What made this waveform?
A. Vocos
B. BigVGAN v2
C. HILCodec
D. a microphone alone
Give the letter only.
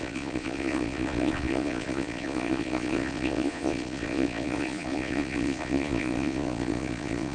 A